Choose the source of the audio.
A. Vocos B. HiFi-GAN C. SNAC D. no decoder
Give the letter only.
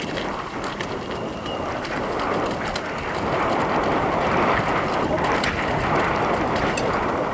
D